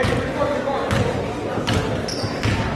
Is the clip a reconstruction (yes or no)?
no